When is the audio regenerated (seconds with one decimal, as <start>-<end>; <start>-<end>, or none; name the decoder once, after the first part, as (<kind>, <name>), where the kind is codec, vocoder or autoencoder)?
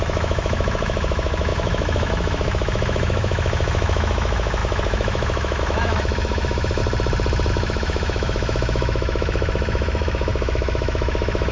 0.0-6.8 (autoencoder, DAC-VAE); 7.5-11.5